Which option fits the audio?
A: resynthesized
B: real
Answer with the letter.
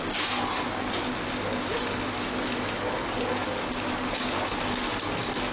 B